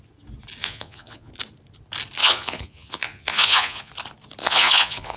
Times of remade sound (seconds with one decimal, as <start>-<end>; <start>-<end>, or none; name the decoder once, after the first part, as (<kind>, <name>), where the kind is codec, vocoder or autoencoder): 0.6-1.3 (vocoder, Vocos); 2.2-3.9; 4.4-5.2